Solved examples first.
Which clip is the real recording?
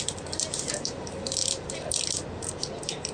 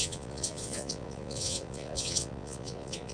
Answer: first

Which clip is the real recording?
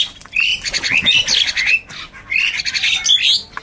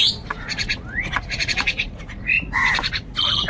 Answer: first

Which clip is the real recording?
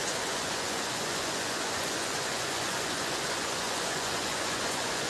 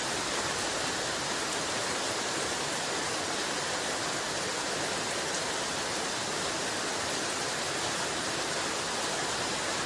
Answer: second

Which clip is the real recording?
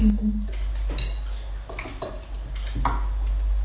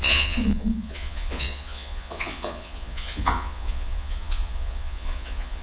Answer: first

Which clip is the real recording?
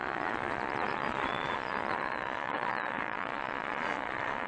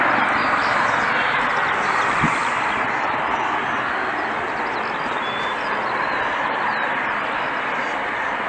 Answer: second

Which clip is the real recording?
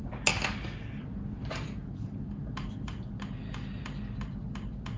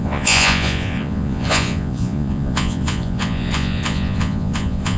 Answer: first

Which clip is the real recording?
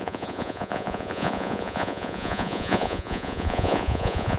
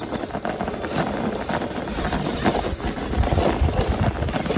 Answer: second